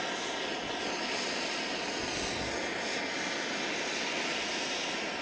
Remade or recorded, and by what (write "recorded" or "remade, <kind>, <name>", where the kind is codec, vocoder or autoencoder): recorded